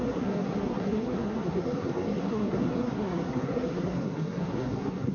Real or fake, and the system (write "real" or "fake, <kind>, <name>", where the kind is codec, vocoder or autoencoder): fake, codec, SNAC